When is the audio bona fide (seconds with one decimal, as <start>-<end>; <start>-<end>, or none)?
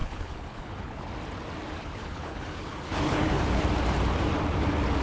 1.1-1.8; 3.6-5.0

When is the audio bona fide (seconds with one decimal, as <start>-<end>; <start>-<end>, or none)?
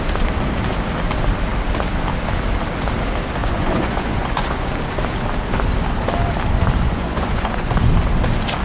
0.0-3.4; 4.7-6.8; 7.9-8.6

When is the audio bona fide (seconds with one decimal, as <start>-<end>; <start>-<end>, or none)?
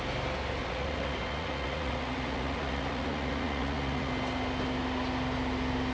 0.0-0.6; 4.1-5.9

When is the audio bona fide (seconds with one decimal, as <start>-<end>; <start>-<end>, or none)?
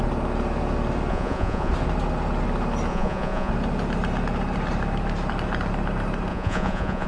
0.0-1.1; 1.7-2.9; 3.5-6.3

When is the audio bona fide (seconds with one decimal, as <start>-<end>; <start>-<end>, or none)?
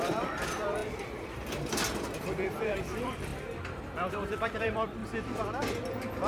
3.3-4.1; 5.0-6.3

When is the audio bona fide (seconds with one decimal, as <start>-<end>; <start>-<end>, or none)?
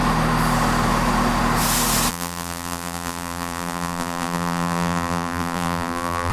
0.0-2.1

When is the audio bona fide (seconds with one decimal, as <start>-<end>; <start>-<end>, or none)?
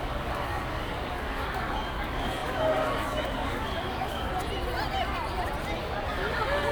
4.3-5.8